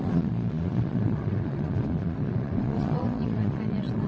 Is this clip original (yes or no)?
no